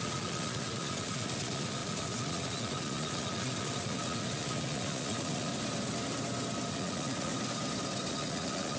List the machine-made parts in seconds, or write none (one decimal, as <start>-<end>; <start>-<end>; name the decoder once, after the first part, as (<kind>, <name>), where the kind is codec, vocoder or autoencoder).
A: 0.0-5.5 (vocoder, Vocos); 6.7-7.3; 8.1-8.8

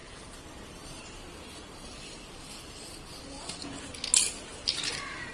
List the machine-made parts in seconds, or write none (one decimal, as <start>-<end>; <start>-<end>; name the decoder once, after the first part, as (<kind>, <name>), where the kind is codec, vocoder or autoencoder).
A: 0.0-3.2 (vocoder, BigVGAN v2)

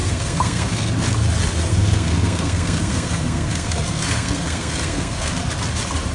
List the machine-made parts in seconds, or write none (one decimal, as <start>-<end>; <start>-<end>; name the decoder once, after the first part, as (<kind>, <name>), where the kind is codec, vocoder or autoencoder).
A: 0.0-0.9 (codec, SNAC); 1.7-5.4

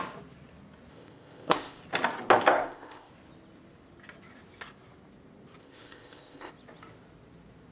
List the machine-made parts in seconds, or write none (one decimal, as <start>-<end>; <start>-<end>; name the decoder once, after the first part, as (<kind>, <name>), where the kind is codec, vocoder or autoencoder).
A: 0.9-1.8 (codec, ZipCodec); 2.5-3.1; 5.6-6.5